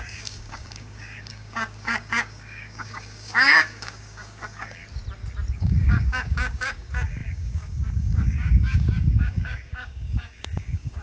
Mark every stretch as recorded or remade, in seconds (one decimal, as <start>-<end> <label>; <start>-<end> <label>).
0.0-4.8 remade; 4.8-5.5 recorded; 5.5-11.0 remade